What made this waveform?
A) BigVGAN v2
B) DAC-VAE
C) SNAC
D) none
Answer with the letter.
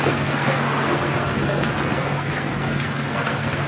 C